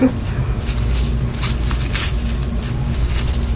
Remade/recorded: recorded